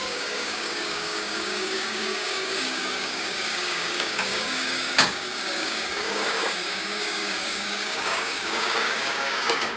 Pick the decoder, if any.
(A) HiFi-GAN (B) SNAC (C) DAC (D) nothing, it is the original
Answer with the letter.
C